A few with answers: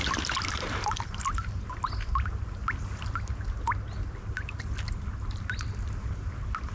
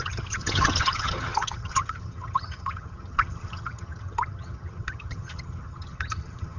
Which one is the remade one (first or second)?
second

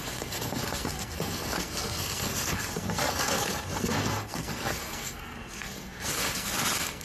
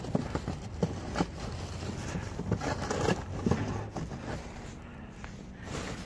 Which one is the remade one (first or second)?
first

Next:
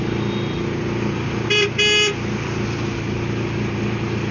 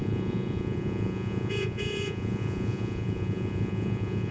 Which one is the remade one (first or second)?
second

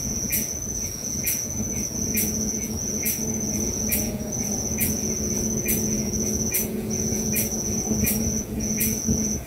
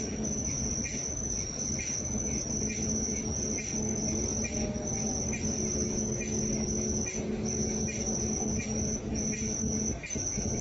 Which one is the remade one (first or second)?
first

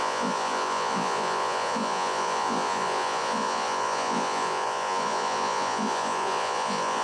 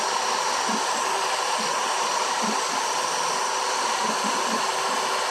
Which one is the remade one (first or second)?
first